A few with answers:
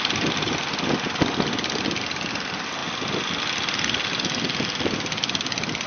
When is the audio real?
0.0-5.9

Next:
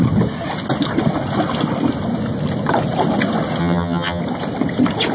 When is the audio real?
0.0-3.6; 4.2-5.1

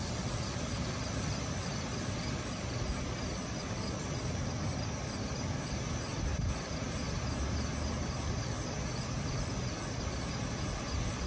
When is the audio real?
0.0-11.3

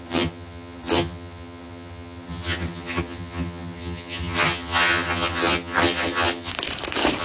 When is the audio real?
6.5-7.2

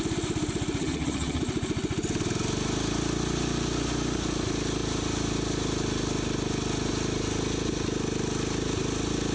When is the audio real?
0.0-0.8; 1.4-9.3